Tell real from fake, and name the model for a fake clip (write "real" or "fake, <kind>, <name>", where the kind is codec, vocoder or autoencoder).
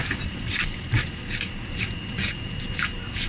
fake, vocoder, BigVGAN v2